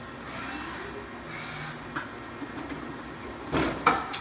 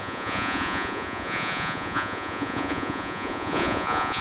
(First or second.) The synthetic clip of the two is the second